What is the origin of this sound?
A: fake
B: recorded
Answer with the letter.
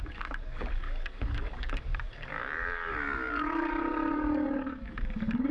A